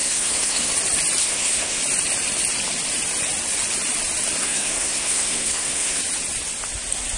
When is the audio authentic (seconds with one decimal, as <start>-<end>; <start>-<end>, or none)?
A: 0.7-1.2; 1.8-4.4; 6.0-7.2